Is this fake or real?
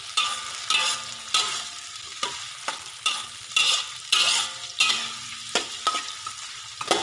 real